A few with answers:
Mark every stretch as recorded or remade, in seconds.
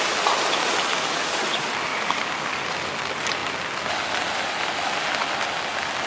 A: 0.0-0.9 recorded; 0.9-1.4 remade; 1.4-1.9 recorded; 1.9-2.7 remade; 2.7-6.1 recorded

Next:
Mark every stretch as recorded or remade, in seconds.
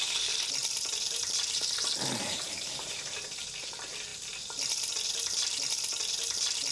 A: 0.0-0.6 recorded; 0.6-3.2 remade; 3.2-6.7 recorded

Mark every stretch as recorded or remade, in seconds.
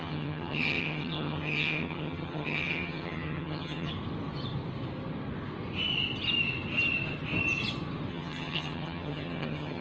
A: 0.0-3.9 remade; 3.9-8.1 recorded; 8.1-9.8 remade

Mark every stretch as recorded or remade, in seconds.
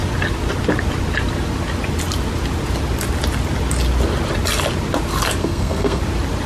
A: 0.0-5.4 recorded; 5.4-6.0 remade; 6.0-6.5 recorded